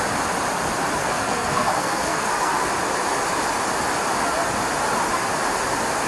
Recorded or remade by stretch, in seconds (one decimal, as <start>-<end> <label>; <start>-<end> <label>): 0.0-1.0 recorded; 1.0-2.7 remade; 2.7-6.1 recorded